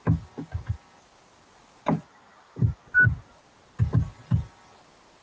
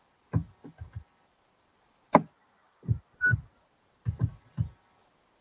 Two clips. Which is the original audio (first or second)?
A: first